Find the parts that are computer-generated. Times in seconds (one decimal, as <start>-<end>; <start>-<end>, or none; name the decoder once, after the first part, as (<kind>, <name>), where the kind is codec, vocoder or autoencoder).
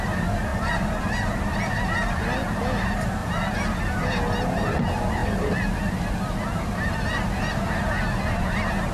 0.5-1.4 (vocoder, BigVGAN v2); 3.2-4.1; 5.2-5.9